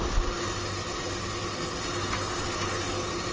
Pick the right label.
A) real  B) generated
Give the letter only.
A